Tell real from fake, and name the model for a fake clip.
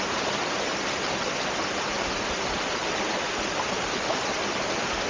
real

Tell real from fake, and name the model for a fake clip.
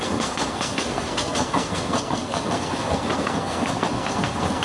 fake, codec, SNAC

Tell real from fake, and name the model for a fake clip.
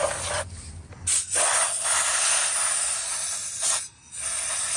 real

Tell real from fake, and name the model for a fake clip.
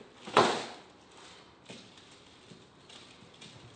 real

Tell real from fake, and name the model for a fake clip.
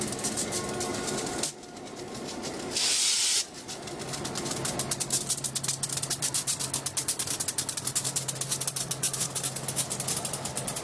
real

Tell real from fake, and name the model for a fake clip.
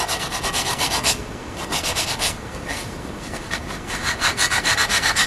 fake, codec, SNAC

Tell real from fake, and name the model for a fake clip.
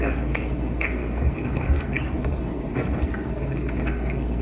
fake, codec, SNAC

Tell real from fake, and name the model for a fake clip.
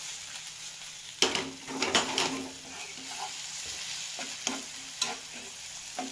real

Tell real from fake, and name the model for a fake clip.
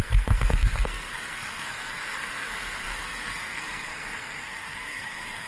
fake, codec, SNAC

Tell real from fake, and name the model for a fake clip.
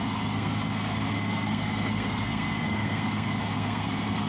fake, codec, SNAC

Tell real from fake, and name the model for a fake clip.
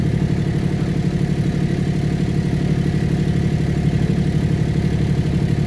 real